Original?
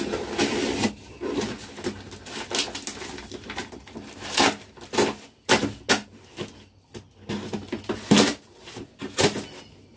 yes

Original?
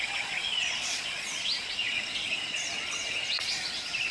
no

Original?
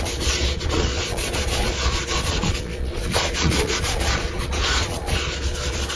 no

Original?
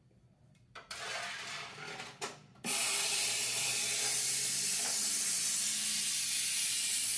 yes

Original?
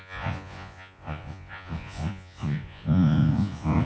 no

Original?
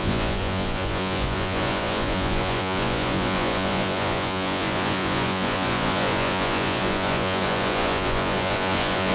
no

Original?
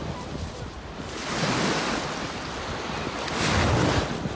yes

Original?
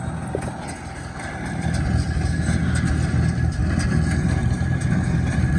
yes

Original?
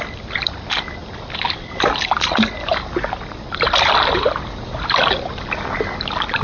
yes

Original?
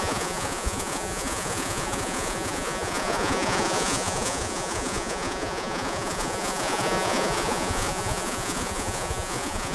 no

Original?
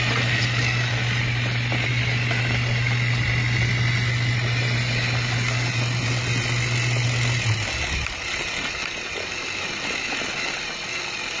yes